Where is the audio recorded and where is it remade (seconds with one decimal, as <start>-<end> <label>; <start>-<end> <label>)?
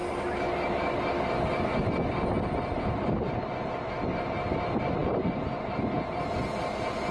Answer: 0.0-7.1 recorded